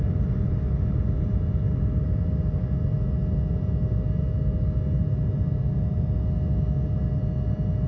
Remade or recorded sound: recorded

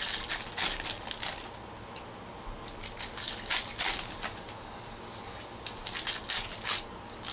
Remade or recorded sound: recorded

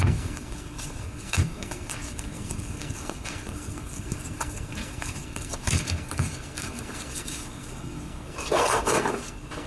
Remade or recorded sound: remade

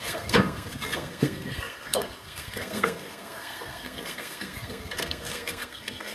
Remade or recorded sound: remade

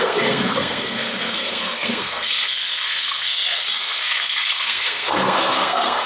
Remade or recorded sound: remade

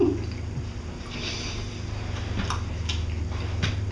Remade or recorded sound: recorded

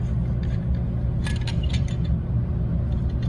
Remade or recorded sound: recorded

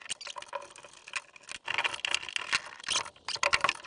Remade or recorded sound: recorded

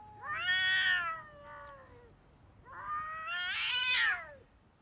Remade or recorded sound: recorded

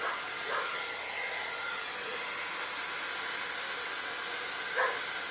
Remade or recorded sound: recorded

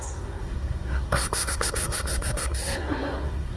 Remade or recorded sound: remade